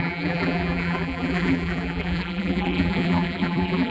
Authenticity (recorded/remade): remade